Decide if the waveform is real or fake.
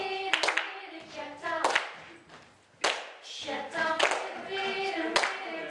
real